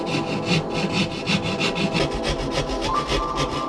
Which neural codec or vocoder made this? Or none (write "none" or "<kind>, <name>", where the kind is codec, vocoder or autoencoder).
none